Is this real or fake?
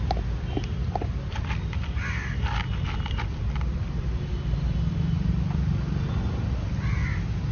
real